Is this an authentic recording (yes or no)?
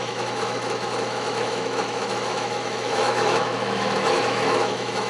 no